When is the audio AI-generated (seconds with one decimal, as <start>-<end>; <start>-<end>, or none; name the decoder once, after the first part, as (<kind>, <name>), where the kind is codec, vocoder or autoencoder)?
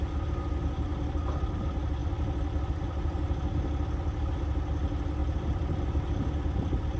0.9-1.6 (vocoder, BigVGAN v2); 2.0-3.2; 5.2-5.8